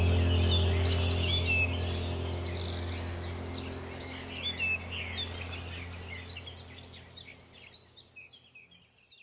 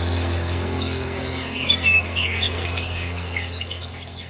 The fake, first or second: second